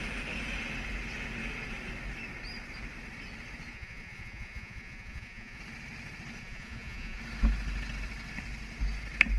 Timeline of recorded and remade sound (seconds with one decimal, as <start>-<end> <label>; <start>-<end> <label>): 0.0-3.7 recorded; 3.7-5.6 remade; 5.6-6.4 recorded; 6.4-7.2 remade; 7.2-9.4 recorded